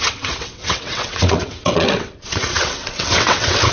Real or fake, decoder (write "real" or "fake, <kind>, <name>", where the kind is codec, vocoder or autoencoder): fake, vocoder, WaveNeXt